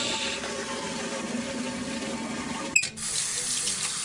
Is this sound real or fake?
real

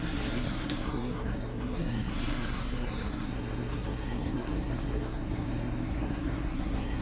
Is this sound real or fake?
fake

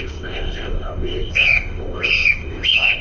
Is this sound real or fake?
fake